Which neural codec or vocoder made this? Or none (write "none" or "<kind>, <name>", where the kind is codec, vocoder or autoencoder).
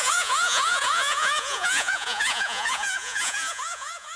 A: vocoder, Vocos